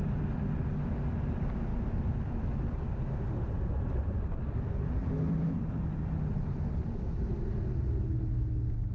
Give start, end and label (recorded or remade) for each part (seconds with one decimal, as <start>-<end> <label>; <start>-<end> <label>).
0.0-1.7 recorded; 1.7-3.1 remade; 3.1-8.9 recorded